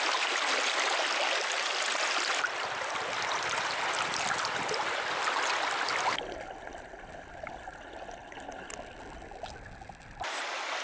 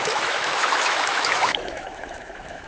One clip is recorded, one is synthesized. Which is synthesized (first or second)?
second